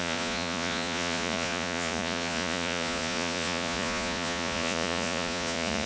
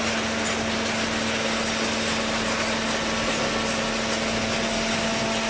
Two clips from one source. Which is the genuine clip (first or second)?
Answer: second